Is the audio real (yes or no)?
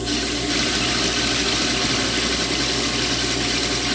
yes